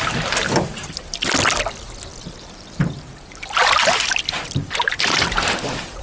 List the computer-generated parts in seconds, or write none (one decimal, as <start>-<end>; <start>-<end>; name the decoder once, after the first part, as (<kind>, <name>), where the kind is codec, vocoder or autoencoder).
none